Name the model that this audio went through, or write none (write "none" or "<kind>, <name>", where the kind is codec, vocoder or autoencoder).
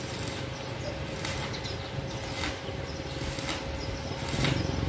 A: none